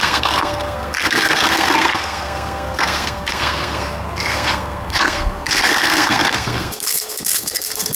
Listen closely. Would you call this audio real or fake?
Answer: fake